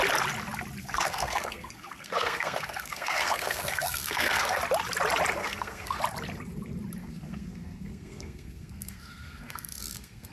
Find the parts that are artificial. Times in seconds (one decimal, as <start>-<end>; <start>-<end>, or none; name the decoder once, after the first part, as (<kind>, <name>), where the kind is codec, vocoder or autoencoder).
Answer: 0.8-4.6 (codec, SNAC); 5.4-6.0; 7.0-10.3